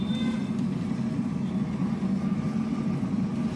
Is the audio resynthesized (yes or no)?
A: no